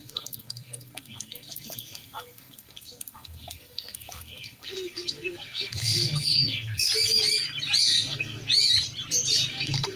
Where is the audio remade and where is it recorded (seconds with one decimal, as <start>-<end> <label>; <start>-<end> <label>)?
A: 0.0-6.9 remade; 6.9-7.8 recorded; 7.8-8.4 remade; 8.4-9.5 recorded; 9.5-10.0 remade